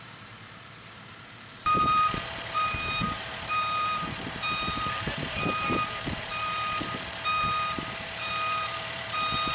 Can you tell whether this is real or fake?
fake